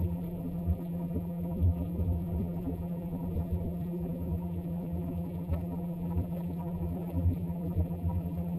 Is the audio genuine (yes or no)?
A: no